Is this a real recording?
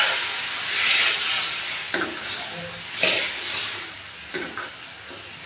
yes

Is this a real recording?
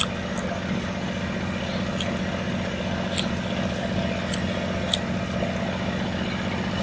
yes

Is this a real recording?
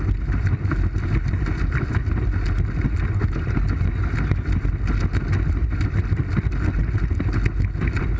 yes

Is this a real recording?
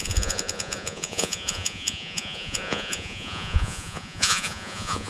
no